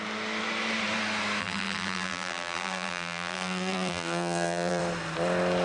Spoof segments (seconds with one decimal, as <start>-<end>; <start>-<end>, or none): 1.4-4.8